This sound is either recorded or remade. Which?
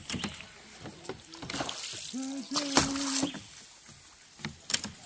recorded